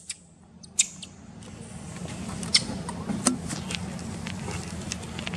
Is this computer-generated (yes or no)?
no